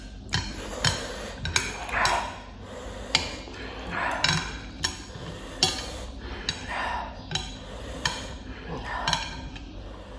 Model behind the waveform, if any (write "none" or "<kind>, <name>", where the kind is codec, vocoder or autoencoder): none